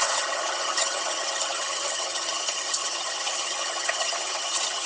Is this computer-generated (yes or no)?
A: yes